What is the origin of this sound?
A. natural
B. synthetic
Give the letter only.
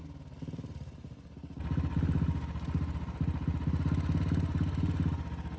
A